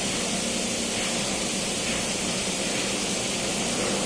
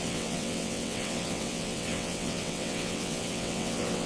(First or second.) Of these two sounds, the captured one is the first